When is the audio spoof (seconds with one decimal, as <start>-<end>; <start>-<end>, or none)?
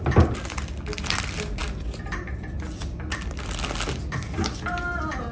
none